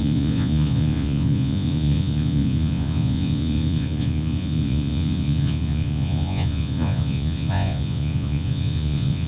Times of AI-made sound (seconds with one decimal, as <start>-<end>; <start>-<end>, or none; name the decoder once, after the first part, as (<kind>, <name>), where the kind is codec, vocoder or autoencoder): 0.0-9.3 (vocoder, Vocos)

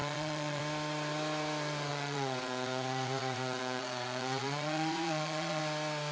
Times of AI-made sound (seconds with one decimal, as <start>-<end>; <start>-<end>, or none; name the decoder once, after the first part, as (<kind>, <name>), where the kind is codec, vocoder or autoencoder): 0.0-0.6 (vocoder, Vocos); 1.9-5.6

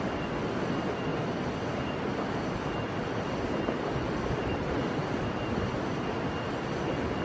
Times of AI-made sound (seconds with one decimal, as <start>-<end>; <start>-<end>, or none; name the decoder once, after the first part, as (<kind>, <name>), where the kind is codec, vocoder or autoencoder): none